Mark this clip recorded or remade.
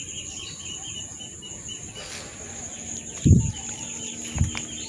recorded